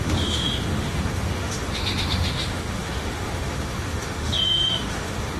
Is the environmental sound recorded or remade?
remade